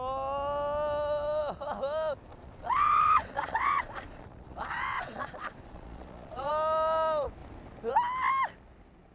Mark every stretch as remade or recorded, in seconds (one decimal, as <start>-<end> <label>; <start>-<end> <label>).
0.0-2.3 recorded; 2.3-6.5 remade; 6.5-9.1 recorded